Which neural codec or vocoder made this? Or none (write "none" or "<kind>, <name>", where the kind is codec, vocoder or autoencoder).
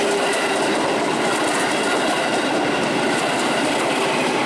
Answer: none